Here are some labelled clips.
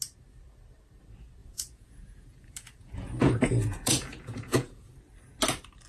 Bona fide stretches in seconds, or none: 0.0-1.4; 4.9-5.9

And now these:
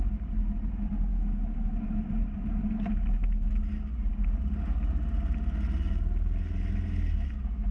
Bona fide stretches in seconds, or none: 0.0-7.7

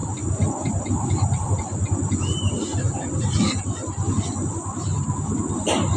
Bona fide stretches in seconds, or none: 0.0-6.0